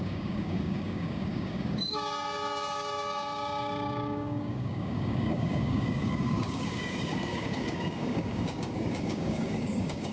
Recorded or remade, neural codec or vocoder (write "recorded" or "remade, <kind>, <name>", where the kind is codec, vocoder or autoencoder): remade, codec, DAC